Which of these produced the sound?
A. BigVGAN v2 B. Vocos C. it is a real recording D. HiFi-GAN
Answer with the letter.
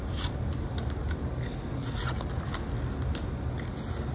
C